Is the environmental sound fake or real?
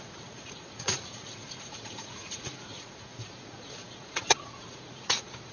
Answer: fake